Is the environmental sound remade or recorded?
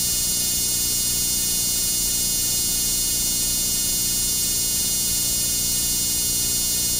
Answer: recorded